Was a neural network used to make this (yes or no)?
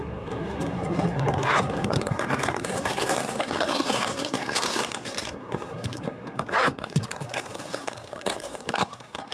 yes